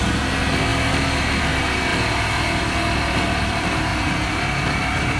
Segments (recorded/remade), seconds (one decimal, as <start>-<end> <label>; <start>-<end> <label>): 0.0-5.2 recorded